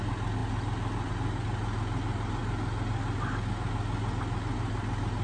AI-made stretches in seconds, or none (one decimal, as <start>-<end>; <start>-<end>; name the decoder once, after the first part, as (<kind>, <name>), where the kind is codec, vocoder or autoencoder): none